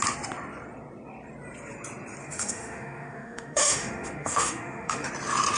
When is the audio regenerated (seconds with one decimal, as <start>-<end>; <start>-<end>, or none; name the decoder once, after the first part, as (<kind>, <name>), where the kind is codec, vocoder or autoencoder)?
2.2-5.1 (autoencoder, DAC-VAE)